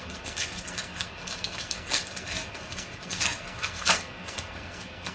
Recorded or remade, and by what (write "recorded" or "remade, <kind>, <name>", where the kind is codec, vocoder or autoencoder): remade, codec, SNAC